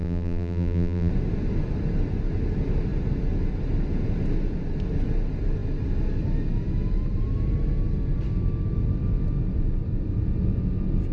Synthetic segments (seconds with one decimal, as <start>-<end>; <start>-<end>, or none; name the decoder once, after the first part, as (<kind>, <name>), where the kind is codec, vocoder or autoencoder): 0.0-1.1 (vocoder, BigVGAN v2)